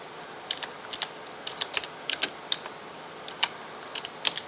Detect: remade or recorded recorded